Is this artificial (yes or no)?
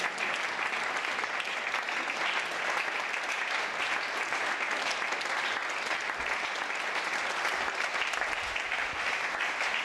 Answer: no